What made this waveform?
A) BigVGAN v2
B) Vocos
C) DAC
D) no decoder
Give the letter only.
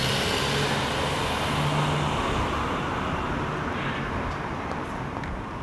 D